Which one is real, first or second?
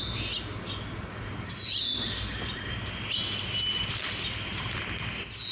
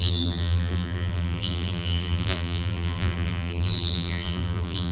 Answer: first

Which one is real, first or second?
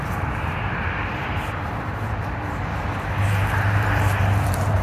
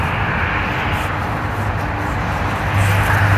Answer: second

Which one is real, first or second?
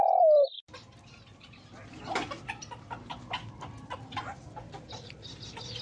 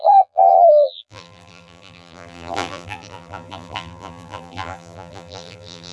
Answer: first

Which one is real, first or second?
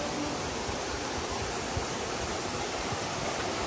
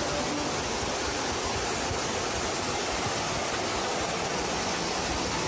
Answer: second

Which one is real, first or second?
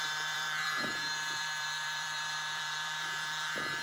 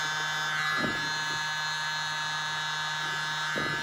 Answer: second